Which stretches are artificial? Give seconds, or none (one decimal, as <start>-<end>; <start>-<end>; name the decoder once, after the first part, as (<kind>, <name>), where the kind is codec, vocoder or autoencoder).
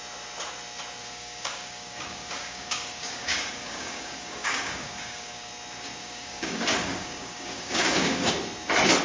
1.0-5.5 (codec, DAC); 6.0-8.3